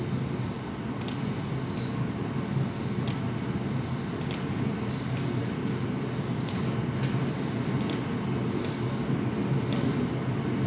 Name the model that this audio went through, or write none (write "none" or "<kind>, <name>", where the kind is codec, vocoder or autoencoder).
none